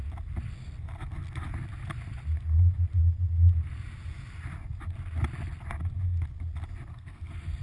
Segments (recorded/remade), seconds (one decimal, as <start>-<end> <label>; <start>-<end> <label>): 0.0-6.9 recorded; 6.9-7.6 remade